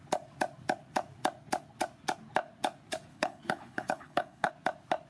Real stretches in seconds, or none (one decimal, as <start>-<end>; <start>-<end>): 0.0-3.1; 4.5-5.1